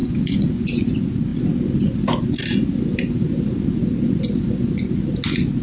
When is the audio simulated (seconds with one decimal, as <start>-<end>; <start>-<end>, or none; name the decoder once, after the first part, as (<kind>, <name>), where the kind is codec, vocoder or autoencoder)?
0.0-0.9 (vocoder, Vocos)

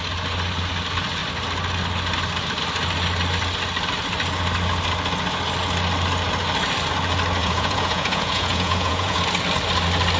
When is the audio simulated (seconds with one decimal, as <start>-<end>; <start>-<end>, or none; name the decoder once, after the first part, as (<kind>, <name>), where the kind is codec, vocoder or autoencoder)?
7.4-9.2 (vocoder, Vocos)